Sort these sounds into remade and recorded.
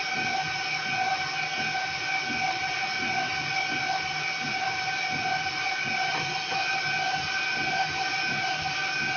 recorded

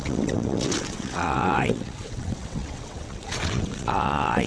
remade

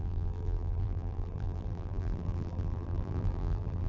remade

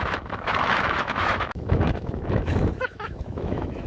remade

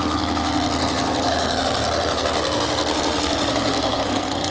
remade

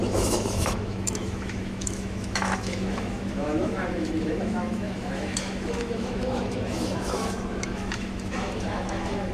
remade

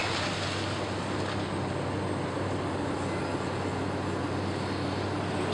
recorded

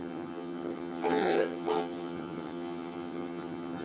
remade